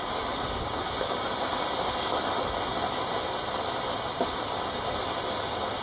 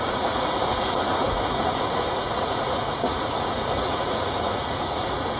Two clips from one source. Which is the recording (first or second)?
first